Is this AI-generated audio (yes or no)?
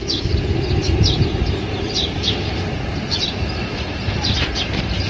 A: yes